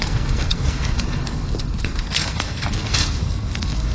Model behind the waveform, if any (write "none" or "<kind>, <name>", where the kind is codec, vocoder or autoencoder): codec, SNAC